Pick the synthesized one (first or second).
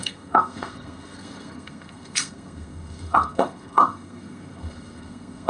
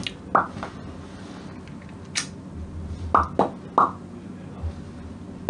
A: first